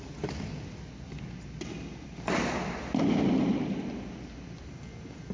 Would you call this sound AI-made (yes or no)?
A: no